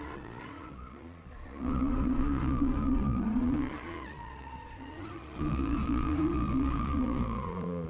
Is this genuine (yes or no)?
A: no